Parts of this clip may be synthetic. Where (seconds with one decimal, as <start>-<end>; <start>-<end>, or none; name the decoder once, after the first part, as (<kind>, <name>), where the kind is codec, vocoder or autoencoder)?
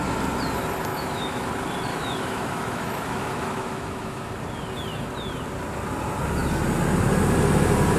0.9-1.5 (autoencoder, DAC-VAE); 1.9-4.3